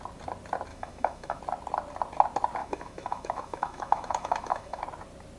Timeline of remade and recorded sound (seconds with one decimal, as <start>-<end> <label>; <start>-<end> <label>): 0.0-0.7 recorded; 0.7-1.4 remade; 1.4-2.6 recorded; 2.6-4.8 remade; 4.8-5.4 recorded